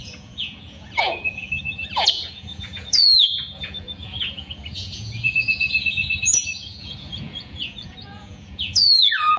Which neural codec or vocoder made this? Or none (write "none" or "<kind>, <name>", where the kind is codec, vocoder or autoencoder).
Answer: vocoder, Vocos